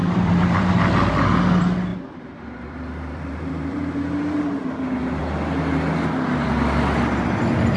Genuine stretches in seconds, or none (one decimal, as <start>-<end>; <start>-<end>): 0.7-1.9; 5.2-7.8